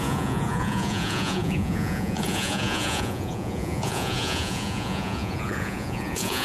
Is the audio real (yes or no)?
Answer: no